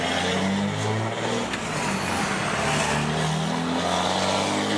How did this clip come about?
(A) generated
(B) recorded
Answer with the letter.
B